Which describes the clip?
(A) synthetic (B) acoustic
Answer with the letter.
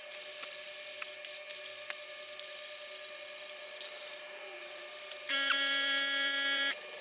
A